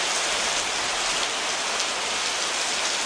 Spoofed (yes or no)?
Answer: no